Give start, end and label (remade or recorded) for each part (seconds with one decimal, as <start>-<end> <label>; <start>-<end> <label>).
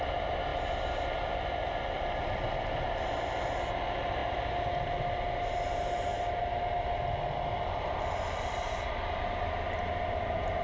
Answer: 0.0-10.6 recorded